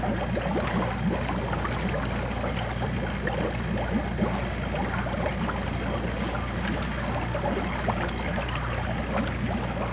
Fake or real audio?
real